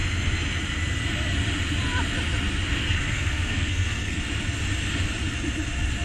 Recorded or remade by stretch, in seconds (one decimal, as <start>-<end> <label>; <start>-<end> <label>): 0.0-2.8 recorded; 2.8-4.2 remade; 4.2-6.0 recorded